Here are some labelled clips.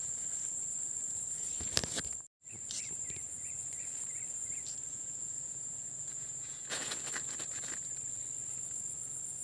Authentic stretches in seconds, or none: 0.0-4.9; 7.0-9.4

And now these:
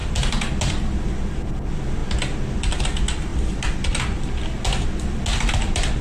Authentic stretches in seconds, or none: 0.0-6.0

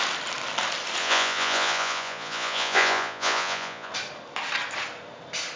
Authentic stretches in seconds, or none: 0.0-1.0; 3.9-5.6